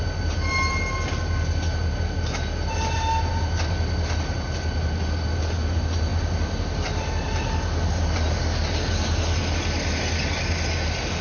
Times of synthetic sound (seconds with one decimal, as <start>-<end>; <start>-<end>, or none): none

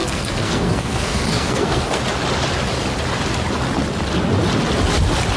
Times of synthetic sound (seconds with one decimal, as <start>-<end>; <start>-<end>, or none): 0.0-2.0

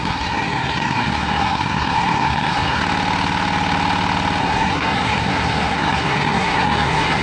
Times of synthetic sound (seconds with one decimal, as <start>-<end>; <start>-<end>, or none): 0.0-2.8; 4.4-7.2

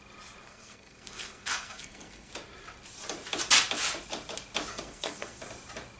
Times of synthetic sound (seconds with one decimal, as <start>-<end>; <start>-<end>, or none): 0.4-2.3; 4.7-5.4

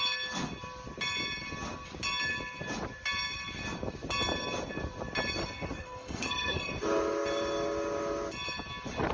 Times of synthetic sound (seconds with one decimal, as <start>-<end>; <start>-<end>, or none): 5.4-6.7

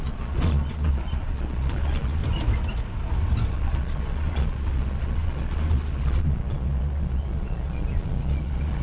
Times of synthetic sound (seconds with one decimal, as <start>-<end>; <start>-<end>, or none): 0.0-2.2; 3.5-8.8

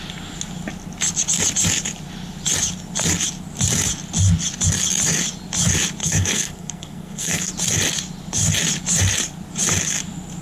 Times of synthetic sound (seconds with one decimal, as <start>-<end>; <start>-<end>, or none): 6.0-7.5

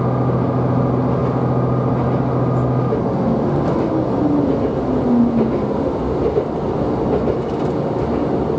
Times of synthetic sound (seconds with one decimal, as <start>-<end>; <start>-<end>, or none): none